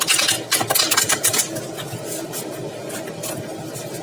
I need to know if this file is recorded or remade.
recorded